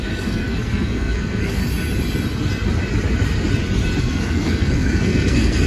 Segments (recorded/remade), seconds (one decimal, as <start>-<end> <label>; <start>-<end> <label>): 0.0-1.6 remade; 1.6-4.0 recorded; 4.0-5.7 remade